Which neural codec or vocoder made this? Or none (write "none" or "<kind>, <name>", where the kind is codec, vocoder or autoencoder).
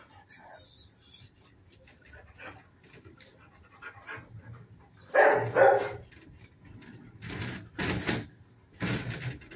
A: none